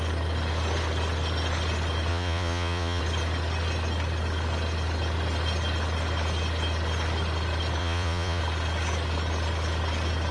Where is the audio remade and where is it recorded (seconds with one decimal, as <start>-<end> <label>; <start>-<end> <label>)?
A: 0.0-2.1 recorded; 2.1-3.0 remade; 3.0-7.8 recorded; 7.8-8.4 remade; 8.4-10.3 recorded